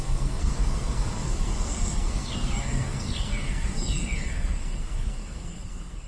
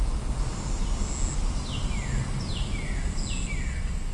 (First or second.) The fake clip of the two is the first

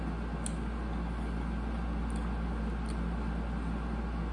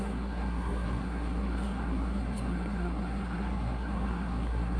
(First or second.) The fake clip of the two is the second